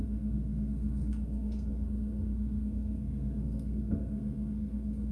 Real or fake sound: fake